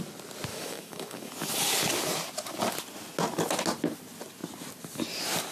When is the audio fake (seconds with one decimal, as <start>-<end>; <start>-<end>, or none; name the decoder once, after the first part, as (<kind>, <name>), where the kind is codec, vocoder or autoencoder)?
0.5-1.3 (autoencoder, DAC-VAE)

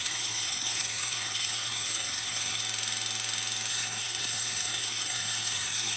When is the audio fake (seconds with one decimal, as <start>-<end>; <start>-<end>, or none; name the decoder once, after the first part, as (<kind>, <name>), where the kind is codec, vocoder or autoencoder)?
0.0-2.6 (codec, SNAC); 3.7-6.0

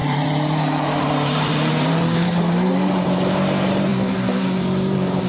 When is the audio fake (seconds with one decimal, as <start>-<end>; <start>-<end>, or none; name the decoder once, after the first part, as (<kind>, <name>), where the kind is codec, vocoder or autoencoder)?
0.0-3.9 (vocoder, BigVGAN v2); 4.4-5.3

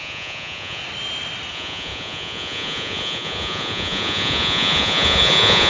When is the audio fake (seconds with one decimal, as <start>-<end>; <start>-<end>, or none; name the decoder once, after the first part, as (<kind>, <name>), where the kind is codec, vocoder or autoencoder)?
0.0-0.8 (vocoder, Vocos); 1.5-5.7

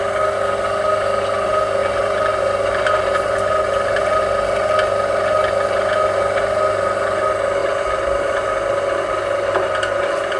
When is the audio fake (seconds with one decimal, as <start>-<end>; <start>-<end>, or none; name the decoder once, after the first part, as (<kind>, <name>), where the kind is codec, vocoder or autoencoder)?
1.8-4.2 (vocoder, BigVGAN v2); 7.6-8.3